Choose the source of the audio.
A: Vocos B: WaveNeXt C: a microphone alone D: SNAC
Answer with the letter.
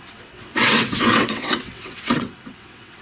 B